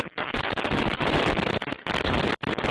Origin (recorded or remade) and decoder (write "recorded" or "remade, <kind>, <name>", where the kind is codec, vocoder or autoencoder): recorded